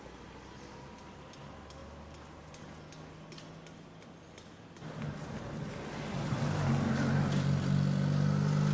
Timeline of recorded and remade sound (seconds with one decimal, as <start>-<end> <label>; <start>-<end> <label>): 0.0-8.7 recorded